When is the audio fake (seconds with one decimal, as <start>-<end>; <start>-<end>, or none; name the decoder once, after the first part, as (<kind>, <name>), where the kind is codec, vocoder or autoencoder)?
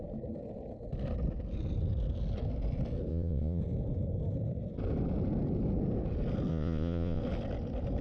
3.1-3.6 (vocoder, Vocos); 6.5-7.2